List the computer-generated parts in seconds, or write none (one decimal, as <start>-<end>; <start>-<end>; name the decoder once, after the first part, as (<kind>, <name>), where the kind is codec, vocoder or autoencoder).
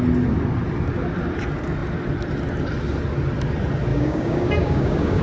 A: 3.9-5.2 (codec, DAC)